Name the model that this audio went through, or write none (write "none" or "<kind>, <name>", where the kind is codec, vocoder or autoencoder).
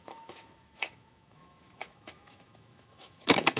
autoencoder, DAC-VAE